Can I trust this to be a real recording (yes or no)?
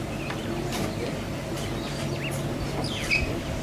yes